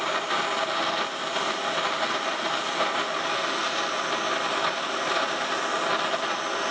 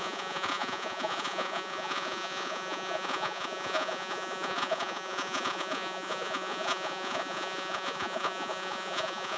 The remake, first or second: second